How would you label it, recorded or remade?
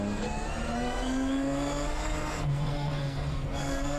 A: remade